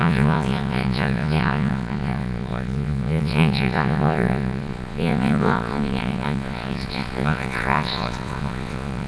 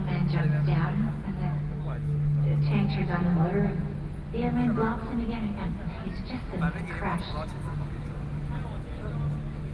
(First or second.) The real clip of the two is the second